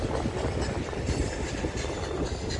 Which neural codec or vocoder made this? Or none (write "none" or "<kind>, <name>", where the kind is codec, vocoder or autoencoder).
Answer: none